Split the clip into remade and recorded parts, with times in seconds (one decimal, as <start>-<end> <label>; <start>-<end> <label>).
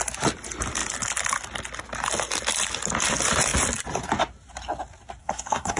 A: 0.0-5.2 recorded; 5.2-5.8 remade